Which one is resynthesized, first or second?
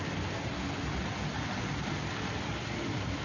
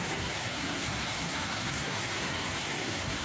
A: second